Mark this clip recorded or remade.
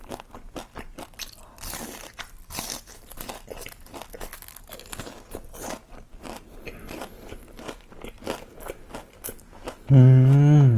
recorded